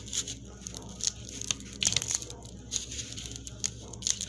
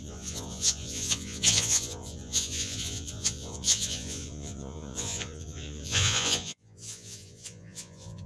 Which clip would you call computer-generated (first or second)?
second